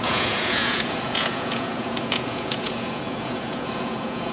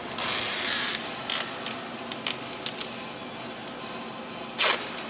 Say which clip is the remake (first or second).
first